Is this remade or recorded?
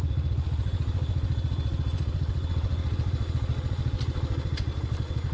recorded